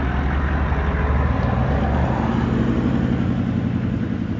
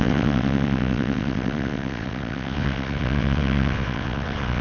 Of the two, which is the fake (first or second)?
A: second